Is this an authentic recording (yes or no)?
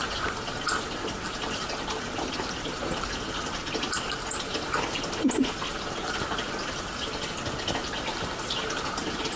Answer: yes